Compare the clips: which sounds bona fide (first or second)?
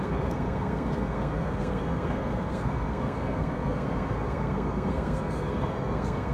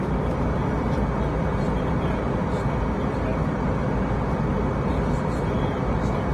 second